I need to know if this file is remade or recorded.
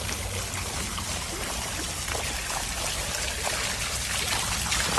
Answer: recorded